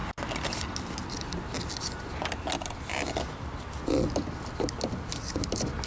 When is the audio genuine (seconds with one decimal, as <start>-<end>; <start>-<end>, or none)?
0.0-5.9